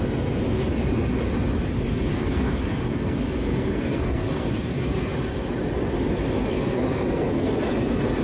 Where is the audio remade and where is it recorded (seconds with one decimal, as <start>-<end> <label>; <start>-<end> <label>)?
0.0-2.1 recorded; 2.1-4.5 remade; 4.5-6.5 recorded; 6.5-7.5 remade; 7.5-8.2 recorded

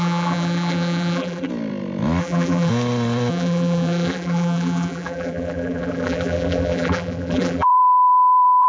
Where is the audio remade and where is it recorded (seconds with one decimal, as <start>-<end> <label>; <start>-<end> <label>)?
0.0-1.5 remade; 1.5-2.2 recorded; 2.2-2.7 remade; 2.7-3.3 recorded; 3.3-8.7 remade

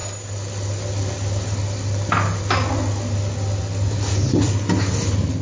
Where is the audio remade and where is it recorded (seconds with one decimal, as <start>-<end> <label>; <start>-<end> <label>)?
0.0-5.4 recorded

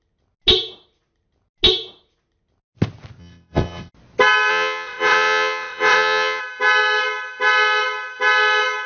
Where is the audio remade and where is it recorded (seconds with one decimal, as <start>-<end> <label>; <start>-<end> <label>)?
0.0-3.2 recorded; 3.2-3.9 remade; 3.9-4.5 recorded; 4.5-6.4 remade; 6.4-8.9 recorded